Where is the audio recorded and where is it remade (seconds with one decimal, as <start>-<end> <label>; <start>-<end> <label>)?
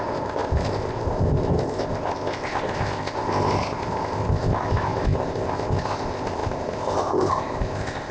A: 0.0-8.1 remade